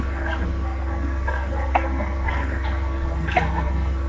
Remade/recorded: remade